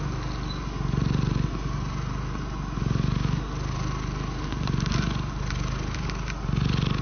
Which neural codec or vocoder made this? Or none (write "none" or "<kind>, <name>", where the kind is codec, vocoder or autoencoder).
none